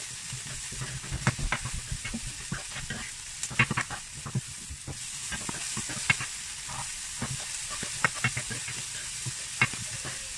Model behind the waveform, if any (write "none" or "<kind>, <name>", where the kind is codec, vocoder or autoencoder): none